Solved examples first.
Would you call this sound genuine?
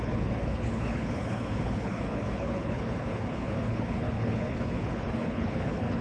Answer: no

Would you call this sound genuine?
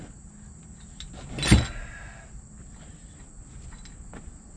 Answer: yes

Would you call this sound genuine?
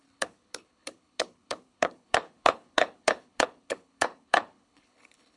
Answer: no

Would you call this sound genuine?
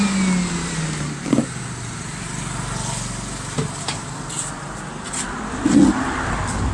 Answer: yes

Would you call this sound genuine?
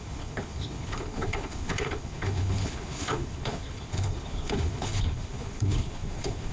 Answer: no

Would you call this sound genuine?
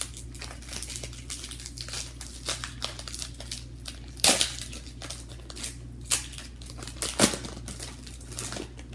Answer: yes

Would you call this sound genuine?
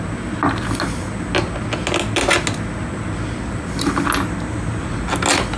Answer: yes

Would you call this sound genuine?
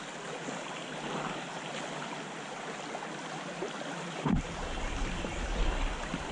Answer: yes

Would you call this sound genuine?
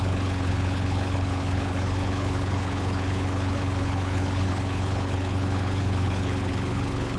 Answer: no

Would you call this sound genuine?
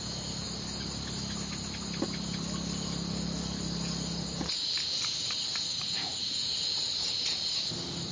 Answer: yes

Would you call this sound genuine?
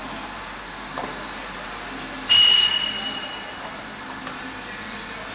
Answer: yes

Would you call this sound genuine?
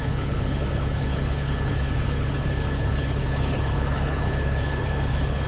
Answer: no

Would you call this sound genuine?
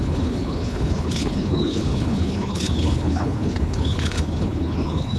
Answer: no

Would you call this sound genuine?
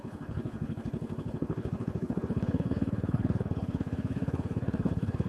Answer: no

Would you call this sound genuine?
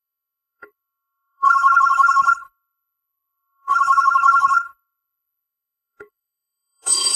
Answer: no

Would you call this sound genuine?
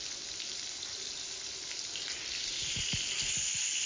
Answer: yes